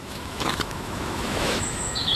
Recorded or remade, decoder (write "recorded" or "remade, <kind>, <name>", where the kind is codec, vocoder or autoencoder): remade, autoencoder, DAC-VAE